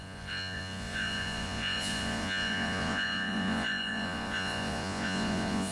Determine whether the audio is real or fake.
fake